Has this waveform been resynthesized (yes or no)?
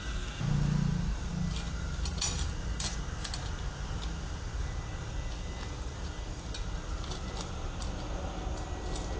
no